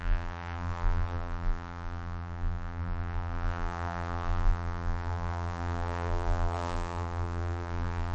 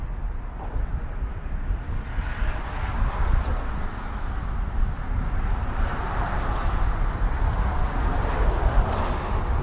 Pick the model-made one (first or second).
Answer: first